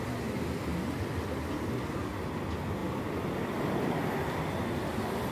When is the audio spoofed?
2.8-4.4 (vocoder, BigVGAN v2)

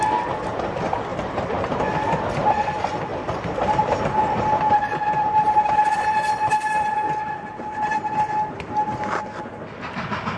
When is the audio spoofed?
1.1-1.8 (vocoder, BigVGAN v2); 3.1-3.8; 5.2-6.0

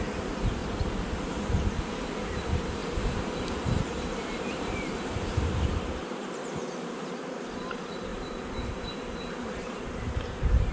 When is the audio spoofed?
0.0-0.6 (vocoder, BigVGAN v2); 1.9-10.7

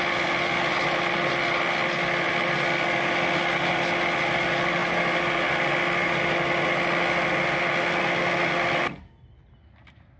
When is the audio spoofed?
none

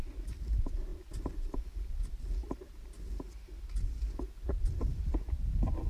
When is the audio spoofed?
4.9-5.5 (vocoder, BigVGAN v2)

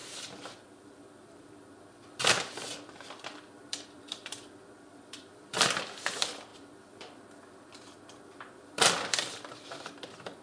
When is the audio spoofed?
0.0-10.4 (vocoder, BigVGAN v2)